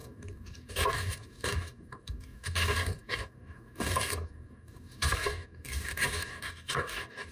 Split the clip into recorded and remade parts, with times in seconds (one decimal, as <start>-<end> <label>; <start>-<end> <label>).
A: 0.0-7.3 remade